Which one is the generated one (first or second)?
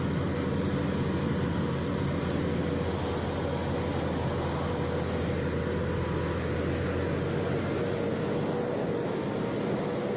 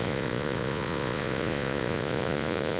second